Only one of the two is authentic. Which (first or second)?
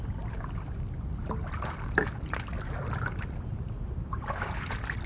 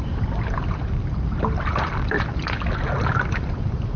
first